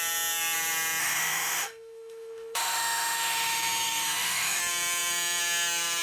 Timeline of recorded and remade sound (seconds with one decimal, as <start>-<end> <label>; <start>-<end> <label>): 0.0-1.0 recorded; 1.0-4.6 remade; 4.6-6.0 recorded